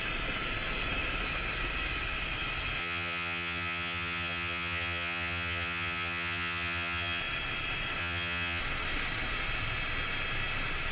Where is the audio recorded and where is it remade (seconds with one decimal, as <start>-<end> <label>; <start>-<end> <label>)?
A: 0.0-2.8 recorded; 2.8-7.2 remade; 7.2-8.0 recorded; 8.0-8.6 remade; 8.6-10.9 recorded